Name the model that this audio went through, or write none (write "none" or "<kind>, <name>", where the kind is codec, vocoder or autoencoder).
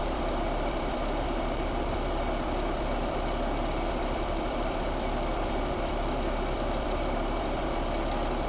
vocoder, BigVGAN v2